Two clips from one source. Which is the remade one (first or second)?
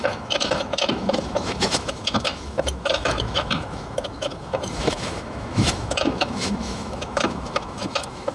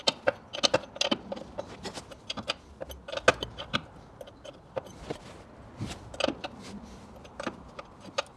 first